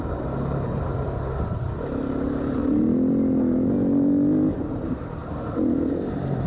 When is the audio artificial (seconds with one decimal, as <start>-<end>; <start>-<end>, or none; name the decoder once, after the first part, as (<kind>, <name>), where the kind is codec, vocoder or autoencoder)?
0.0-0.9 (vocoder, BigVGAN v2); 1.8-2.6; 4.5-5.2; 5.9-6.5